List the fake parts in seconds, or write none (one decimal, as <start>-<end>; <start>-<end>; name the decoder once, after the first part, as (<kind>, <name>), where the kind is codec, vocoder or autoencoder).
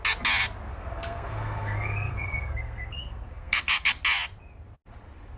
0.7-3.9 (codec, SNAC)